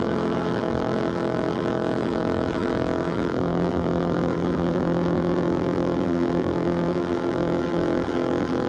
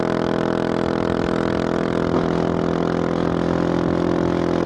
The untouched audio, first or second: second